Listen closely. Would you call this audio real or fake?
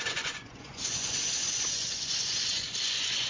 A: fake